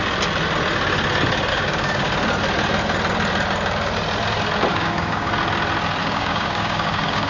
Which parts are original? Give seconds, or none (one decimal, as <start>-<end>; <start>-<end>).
0.0-1.5; 2.1-4.7; 5.3-6.0

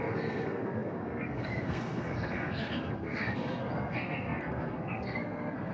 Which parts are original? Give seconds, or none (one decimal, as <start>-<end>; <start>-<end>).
none

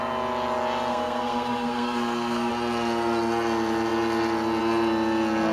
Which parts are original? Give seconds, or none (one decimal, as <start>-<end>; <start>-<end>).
0.0-0.9; 2.5-5.5

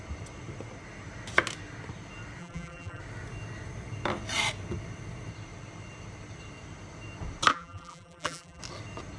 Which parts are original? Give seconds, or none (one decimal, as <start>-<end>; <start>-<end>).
0.0-2.4; 3.0-7.5; 8.6-9.2

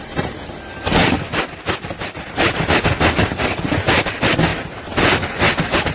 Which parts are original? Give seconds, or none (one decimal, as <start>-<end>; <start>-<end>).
1.0-3.4; 4.5-5.9

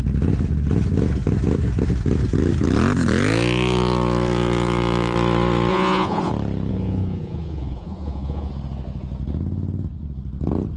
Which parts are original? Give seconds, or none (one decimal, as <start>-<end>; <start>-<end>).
0.0-5.7; 6.3-6.7; 8.5-10.8